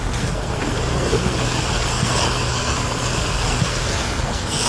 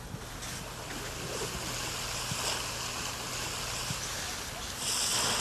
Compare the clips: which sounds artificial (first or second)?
first